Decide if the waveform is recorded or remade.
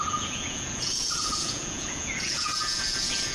remade